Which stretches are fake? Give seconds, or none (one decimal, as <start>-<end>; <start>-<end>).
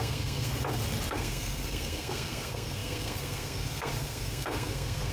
0.0-0.5; 1.1-5.1